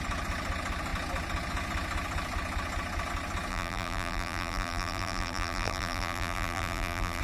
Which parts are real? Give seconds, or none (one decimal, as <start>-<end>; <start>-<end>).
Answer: 0.0-3.5